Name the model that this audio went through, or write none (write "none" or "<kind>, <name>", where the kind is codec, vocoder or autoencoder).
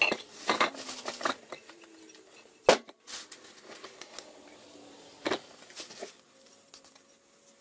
none